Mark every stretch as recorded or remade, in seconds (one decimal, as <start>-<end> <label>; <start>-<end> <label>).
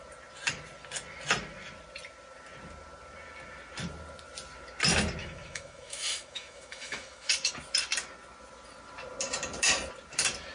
0.0-5.2 recorded; 5.2-7.5 remade; 7.5-10.5 recorded